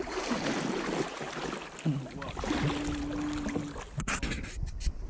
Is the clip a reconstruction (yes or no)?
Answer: no